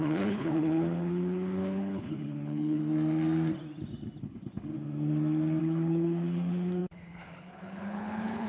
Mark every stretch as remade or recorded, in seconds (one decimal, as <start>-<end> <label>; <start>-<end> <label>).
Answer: 0.0-2.8 remade; 2.8-4.2 recorded; 4.2-4.7 remade; 4.7-5.6 recorded; 5.6-8.5 remade